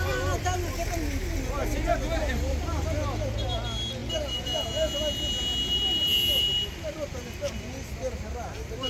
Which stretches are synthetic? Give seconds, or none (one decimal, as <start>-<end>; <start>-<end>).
none